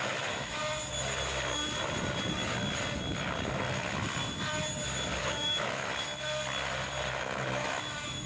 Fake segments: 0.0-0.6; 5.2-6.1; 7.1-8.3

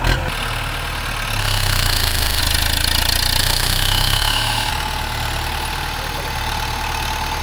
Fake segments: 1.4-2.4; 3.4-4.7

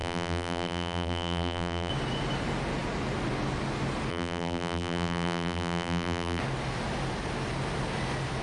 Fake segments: 0.0-1.9; 4.1-6.4

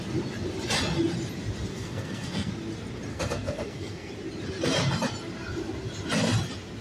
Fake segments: 1.7-2.5; 3.1-4.1